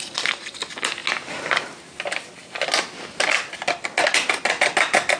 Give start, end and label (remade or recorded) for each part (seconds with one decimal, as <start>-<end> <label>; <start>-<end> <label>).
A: 0.0-5.2 recorded